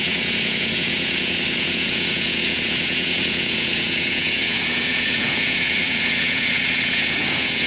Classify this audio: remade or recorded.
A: remade